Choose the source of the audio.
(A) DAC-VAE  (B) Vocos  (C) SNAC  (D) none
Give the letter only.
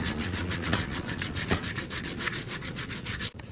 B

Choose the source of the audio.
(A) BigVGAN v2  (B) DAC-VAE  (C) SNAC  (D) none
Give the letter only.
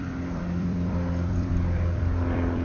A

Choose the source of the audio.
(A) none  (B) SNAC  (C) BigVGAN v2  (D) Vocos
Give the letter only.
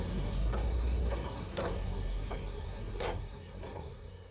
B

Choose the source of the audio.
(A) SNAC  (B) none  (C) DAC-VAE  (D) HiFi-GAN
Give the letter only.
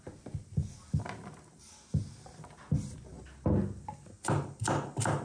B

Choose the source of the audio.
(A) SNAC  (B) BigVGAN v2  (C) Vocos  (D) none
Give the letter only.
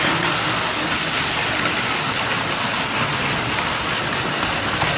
D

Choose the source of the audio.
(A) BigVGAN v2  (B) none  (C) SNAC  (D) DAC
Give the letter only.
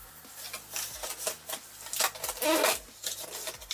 B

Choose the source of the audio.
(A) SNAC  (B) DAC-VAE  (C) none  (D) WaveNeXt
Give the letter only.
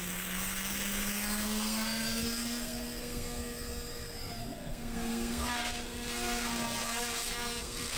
A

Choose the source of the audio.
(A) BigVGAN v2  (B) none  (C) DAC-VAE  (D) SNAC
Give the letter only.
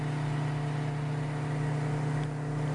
B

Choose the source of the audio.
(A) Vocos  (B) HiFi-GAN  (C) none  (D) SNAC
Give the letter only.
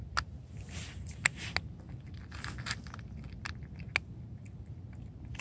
C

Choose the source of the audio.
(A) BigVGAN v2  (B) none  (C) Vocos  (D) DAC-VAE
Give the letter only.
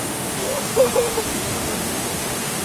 D